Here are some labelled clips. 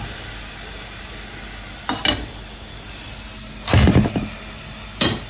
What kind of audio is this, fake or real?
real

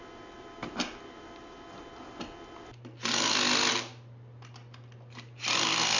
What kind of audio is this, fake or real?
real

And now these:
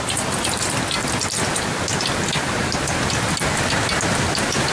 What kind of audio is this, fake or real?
real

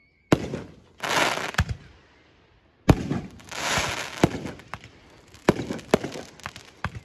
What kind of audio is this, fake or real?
real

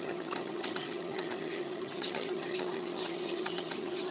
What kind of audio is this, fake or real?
fake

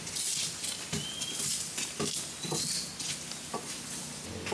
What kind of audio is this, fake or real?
real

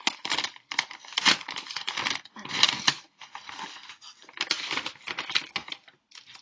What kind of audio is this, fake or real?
real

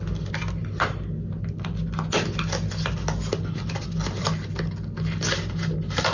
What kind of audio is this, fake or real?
real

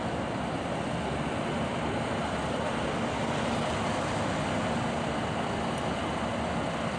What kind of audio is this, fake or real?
real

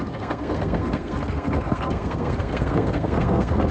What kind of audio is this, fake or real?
fake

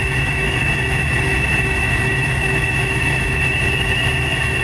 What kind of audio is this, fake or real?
fake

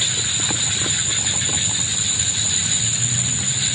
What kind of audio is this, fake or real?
real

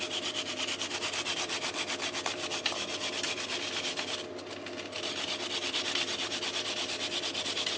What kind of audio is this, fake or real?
real